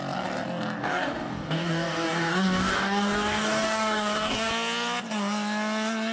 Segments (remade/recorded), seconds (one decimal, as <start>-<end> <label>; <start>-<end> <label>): 0.0-0.8 recorded; 0.8-4.5 remade; 4.5-6.1 recorded